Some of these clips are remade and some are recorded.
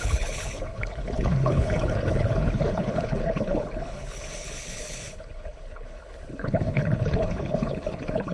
remade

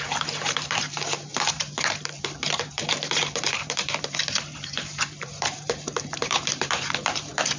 remade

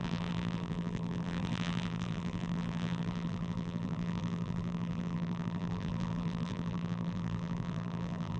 remade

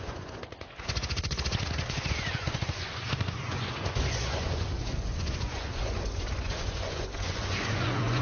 remade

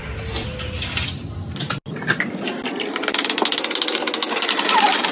recorded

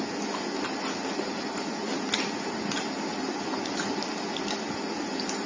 recorded